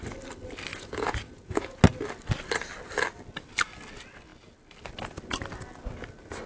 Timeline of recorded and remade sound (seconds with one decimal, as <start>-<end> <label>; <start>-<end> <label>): 0.0-0.7 recorded; 0.7-1.8 remade; 1.8-6.5 recorded